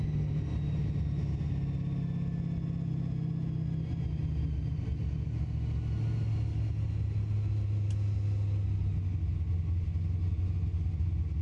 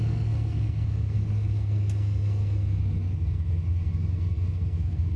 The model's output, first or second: second